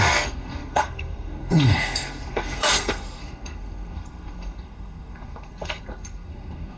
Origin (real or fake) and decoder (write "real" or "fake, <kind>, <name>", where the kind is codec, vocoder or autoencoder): fake, codec, SNAC